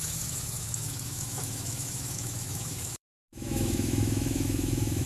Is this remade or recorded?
remade